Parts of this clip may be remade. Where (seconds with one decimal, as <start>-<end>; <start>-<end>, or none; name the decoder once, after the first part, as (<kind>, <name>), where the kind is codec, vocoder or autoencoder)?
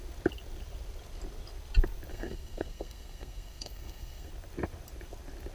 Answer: 2.1-4.3 (codec, SNAC)